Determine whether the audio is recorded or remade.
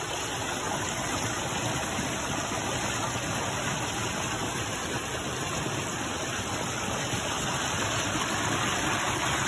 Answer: recorded